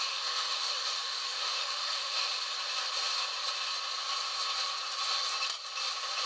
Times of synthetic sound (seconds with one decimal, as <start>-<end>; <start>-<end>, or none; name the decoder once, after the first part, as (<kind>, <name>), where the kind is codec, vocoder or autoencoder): 0.0-2.3 (autoencoder, DAC-VAE)